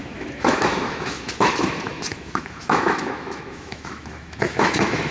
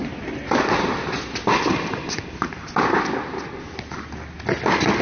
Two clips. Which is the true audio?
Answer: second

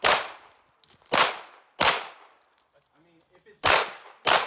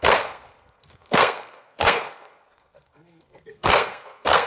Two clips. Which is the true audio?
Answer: first